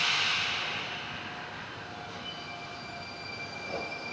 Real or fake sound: real